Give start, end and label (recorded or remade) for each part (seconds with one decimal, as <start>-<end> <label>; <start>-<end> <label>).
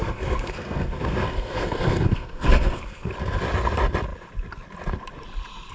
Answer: 0.0-3.1 remade; 3.1-5.7 recorded